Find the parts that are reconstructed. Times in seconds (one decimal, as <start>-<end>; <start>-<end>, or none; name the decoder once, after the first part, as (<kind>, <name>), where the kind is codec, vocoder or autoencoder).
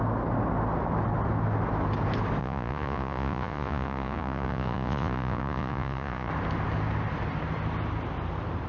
2.4-6.3 (vocoder, Vocos)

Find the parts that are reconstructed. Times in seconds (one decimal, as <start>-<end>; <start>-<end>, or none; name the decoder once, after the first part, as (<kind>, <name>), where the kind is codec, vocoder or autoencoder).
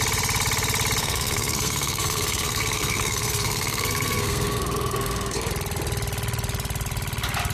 1.0-5.5 (codec, SNAC)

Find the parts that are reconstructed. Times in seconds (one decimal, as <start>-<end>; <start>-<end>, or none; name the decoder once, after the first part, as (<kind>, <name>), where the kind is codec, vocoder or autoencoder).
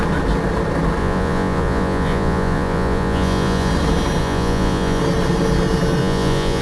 1.0-3.7 (vocoder, Vocos); 4.2-5.0; 6.0-6.6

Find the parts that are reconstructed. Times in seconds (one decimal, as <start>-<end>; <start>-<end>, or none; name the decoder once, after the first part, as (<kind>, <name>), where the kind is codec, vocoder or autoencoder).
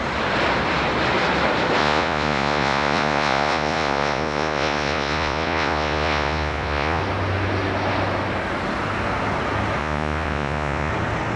1.8-7.0 (vocoder, Vocos); 9.8-10.9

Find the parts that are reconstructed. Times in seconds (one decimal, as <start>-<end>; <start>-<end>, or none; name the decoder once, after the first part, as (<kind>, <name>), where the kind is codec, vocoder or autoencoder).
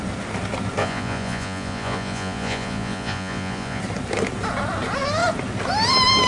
0.8-3.8 (vocoder, Vocos)